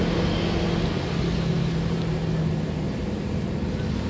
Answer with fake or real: real